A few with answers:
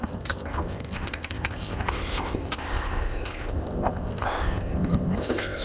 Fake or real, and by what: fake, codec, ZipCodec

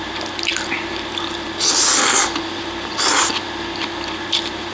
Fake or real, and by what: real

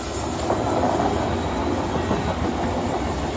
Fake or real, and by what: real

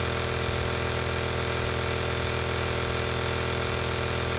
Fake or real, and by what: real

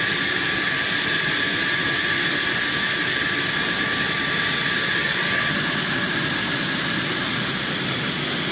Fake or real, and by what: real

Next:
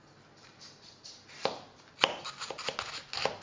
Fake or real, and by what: real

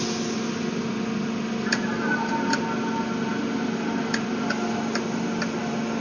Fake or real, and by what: real